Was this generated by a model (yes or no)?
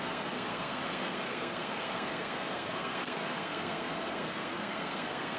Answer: yes